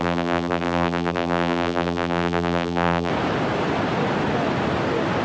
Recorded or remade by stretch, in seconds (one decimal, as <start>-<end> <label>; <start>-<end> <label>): 0.0-3.1 remade; 3.1-5.2 recorded